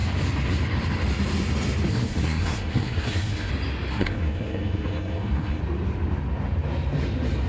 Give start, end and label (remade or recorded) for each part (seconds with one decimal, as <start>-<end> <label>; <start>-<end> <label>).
0.0-1.9 recorded; 1.9-3.5 remade; 3.5-3.9 recorded; 3.9-5.6 remade; 5.6-7.5 recorded